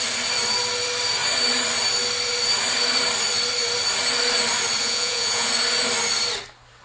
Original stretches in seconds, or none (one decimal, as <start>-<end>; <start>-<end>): 0.0-4.8; 5.5-6.8